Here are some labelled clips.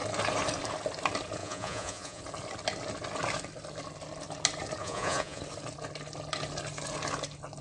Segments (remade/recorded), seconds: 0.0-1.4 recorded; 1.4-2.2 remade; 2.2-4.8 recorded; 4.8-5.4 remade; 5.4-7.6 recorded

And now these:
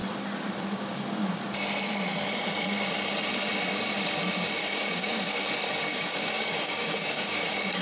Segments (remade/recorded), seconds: 0.0-4.6 recorded; 4.6-5.4 remade; 5.4-5.9 recorded; 5.9-7.8 remade

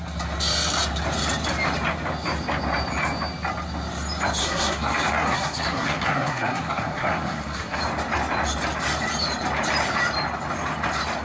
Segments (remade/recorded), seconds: 0.0-4.4 recorded; 4.4-7.8 remade; 7.8-11.2 recorded

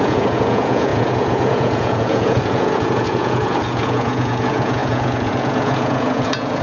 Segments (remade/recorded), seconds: 0.0-6.6 remade

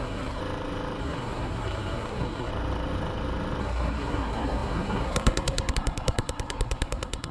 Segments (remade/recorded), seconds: 0.0-0.4 remade; 0.4-1.0 recorded; 1.0-2.5 remade; 2.5-3.6 recorded; 3.6-7.3 remade

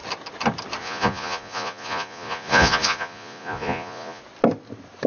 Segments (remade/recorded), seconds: 0.0-0.8 recorded; 0.8-4.2 remade; 4.2-5.1 recorded